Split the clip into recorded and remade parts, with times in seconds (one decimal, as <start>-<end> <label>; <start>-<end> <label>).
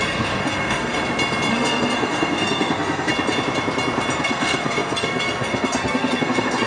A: 0.0-1.0 remade; 1.0-1.5 recorded; 1.5-3.1 remade; 3.1-4.2 recorded; 4.2-6.7 remade